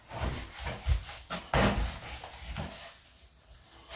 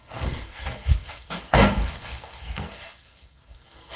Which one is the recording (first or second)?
first